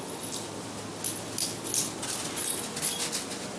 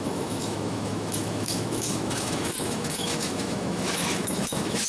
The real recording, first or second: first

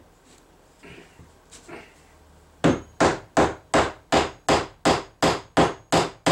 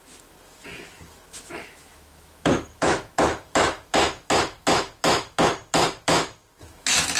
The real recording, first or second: first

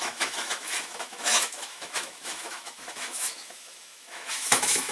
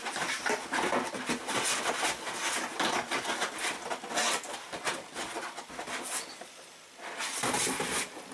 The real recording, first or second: second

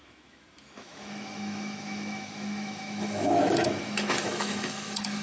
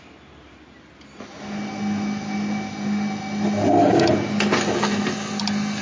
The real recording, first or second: second